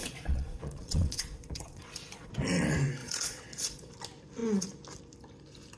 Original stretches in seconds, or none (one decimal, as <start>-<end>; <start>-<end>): 2.3-3.0; 3.9-5.8

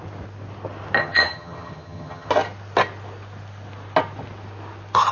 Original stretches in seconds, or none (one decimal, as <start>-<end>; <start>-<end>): 0.0-1.0; 2.3-5.1